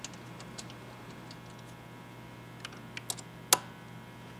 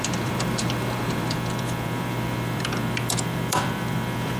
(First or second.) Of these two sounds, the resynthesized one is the second